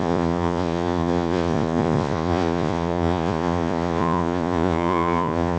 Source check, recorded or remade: remade